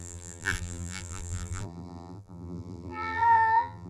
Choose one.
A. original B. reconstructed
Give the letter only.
B